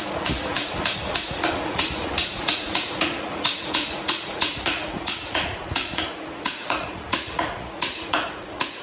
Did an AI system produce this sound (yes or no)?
yes